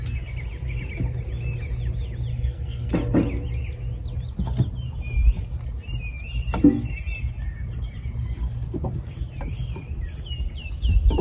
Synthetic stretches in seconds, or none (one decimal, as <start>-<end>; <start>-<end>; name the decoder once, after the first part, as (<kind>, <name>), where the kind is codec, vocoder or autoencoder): 2.3-2.9 (codec, SNAC)